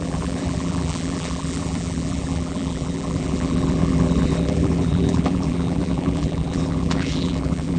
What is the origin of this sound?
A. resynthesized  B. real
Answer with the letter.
A